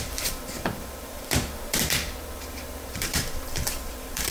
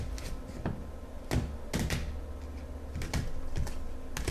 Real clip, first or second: second